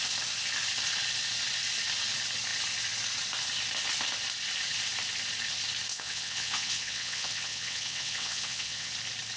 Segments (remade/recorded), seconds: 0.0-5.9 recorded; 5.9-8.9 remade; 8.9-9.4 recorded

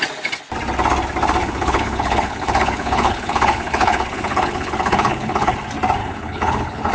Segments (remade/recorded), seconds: 0.0-1.4 recorded; 1.4-5.5 remade; 5.5-6.0 recorded; 6.0-6.9 remade